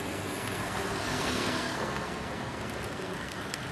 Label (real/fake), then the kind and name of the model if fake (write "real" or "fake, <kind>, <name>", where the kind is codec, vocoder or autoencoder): fake, codec, SNAC